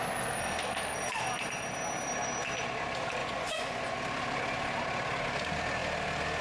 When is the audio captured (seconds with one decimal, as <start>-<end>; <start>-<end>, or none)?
0.0-3.2; 4.0-6.4